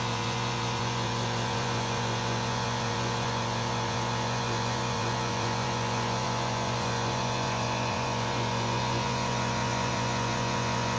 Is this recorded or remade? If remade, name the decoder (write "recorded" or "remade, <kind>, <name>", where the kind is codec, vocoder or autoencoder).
remade, vocoder, Vocos